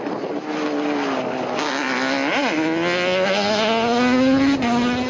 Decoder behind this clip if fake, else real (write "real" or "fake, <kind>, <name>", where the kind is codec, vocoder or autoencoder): real